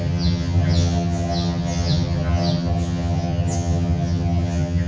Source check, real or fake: fake